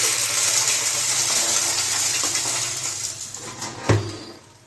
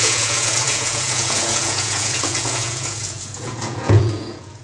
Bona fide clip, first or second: first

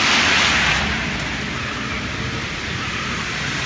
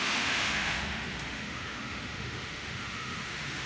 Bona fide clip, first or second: first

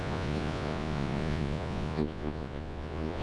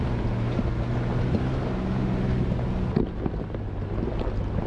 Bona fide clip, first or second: second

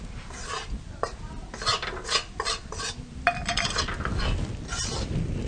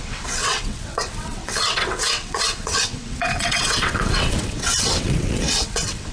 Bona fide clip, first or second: first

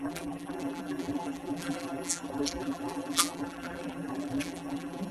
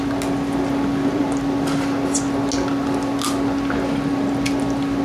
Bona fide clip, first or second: second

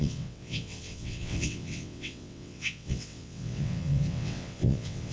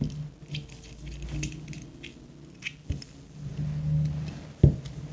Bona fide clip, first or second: second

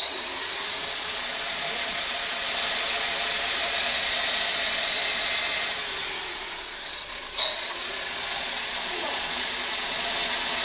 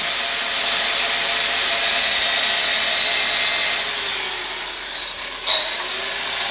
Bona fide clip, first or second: second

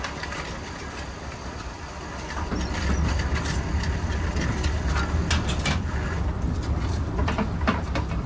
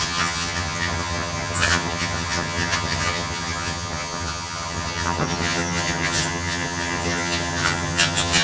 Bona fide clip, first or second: first